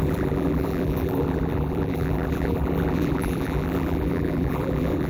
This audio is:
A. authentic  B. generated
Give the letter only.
B